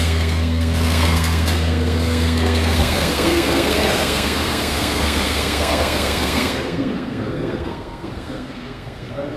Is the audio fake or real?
fake